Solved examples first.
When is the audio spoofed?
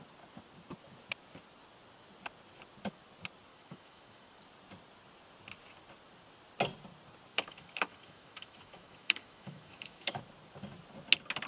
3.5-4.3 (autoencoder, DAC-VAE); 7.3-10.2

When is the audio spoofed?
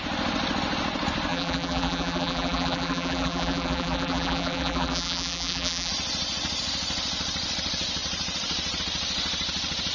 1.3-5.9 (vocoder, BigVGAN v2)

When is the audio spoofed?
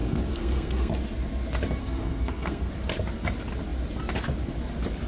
0.0-0.9 (codec, SNAC); 1.8-2.7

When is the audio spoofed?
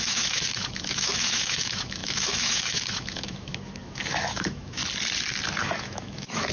0.0-4.8 (autoencoder, DAC-VAE); 5.8-6.5